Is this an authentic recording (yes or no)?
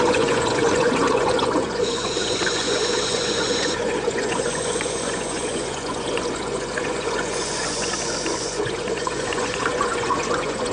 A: no